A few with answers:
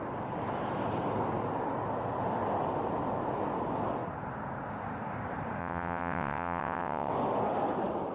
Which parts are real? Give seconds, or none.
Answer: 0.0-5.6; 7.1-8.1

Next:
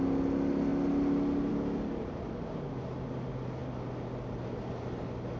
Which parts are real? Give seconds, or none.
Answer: 0.0-5.4

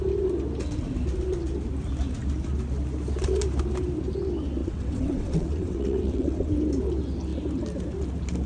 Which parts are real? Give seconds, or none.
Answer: 0.0-4.6; 6.5-8.5

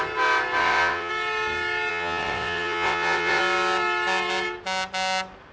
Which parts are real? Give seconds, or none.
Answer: 0.0-0.6; 1.1-1.9; 3.4-5.5

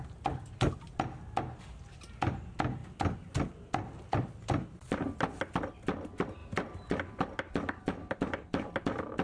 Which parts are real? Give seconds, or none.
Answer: 0.0-9.2